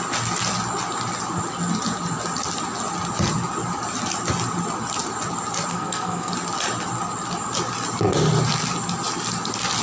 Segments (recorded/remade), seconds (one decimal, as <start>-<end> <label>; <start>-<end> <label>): 0.0-5.7 recorded; 5.7-6.3 remade; 6.3-9.8 recorded